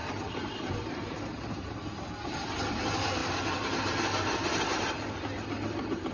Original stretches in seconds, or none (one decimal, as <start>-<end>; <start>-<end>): 0.0-6.1